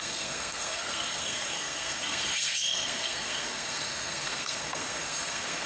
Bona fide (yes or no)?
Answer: no